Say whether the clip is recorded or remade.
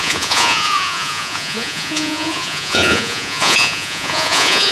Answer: remade